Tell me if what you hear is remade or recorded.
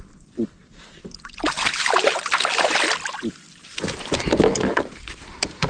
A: recorded